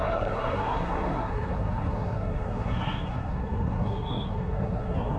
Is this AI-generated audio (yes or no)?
yes